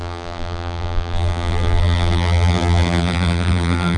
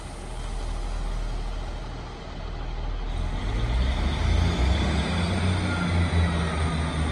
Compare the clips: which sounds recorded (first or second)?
second